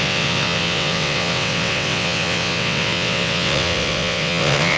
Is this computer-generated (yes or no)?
yes